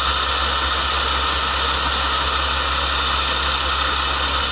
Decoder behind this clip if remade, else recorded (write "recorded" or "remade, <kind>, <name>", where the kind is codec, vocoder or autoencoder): recorded